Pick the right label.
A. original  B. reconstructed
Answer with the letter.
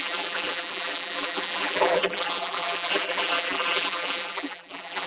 B